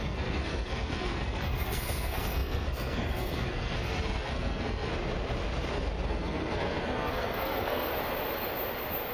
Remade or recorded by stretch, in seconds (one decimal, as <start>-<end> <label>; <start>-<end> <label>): 0.0-4.9 remade; 4.9-6.1 recorded; 6.1-7.9 remade; 7.9-9.1 recorded

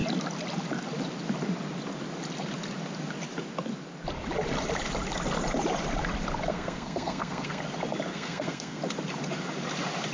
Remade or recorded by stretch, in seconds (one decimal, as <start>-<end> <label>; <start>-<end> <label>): 0.0-6.5 recorded; 6.5-7.6 remade; 7.6-8.1 recorded; 8.1-8.8 remade; 8.8-10.1 recorded

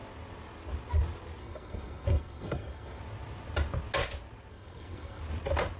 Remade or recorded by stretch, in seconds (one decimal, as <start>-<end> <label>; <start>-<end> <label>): 0.0-1.4 recorded; 1.4-3.0 remade; 3.0-4.5 recorded; 4.5-5.2 remade; 5.2-5.8 recorded